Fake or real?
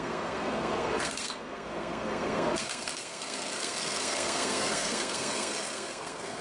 fake